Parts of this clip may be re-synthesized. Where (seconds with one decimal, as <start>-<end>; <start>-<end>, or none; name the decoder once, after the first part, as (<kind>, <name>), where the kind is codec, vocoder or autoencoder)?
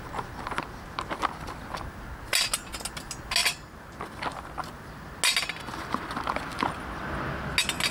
3.4-4.6 (vocoder, BigVGAN v2); 6.5-7.5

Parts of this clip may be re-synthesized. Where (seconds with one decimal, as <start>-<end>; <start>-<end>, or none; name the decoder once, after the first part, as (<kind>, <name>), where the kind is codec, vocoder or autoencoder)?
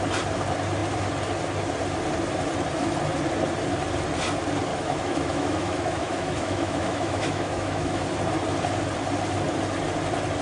4.7-8.0 (autoencoder, DAC-VAE)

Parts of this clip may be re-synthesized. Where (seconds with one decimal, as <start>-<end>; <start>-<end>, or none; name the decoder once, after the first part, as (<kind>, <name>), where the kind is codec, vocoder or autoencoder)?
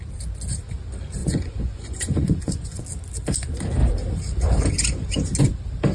1.2-2.8 (vocoder, Vocos)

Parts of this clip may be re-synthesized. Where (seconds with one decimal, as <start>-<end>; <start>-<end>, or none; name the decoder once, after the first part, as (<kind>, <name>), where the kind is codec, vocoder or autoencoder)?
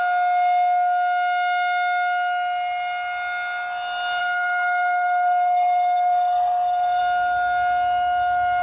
4.2-7.0 (codec, SNAC)